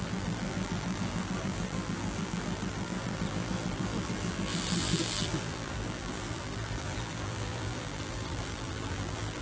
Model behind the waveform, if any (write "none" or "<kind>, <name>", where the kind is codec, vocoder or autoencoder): vocoder, BigVGAN v2